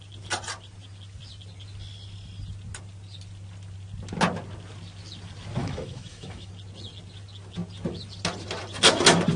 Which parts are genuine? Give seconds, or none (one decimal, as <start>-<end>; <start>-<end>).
0.0-5.6; 6.5-9.4